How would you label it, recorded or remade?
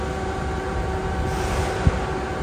recorded